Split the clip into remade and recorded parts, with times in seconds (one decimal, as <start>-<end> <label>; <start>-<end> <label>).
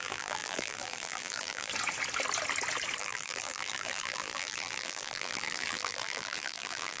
0.0-1.7 remade; 1.7-3.0 recorded; 3.0-7.0 remade